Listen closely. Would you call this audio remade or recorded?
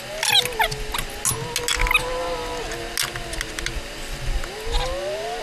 recorded